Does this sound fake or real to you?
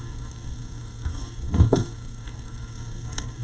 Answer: fake